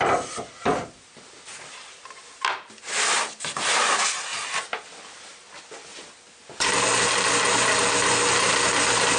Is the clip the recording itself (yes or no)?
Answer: yes